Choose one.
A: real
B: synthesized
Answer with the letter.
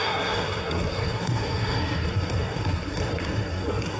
B